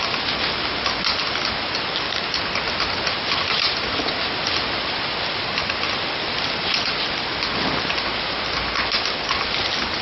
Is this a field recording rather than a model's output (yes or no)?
yes